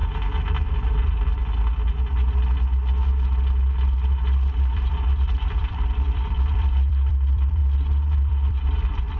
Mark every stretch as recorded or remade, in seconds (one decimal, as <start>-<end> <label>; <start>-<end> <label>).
0.0-0.5 recorded; 0.5-1.4 remade; 1.4-4.7 recorded; 4.7-7.6 remade; 7.6-8.2 recorded; 8.2-9.2 remade